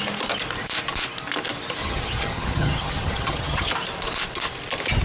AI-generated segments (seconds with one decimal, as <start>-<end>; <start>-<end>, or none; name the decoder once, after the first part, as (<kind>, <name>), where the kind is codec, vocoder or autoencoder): 1.8-3.7 (vocoder, HiFi-GAN)